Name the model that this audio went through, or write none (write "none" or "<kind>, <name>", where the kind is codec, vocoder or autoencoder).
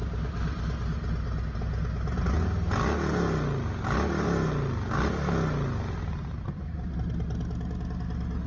none